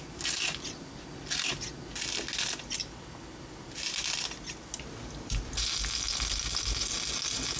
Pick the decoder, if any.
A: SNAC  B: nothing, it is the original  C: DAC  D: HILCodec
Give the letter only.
B